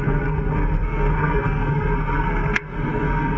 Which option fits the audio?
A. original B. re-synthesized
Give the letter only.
B